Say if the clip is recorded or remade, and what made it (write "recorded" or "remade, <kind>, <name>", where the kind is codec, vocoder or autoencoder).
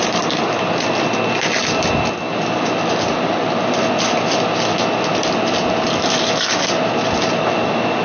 recorded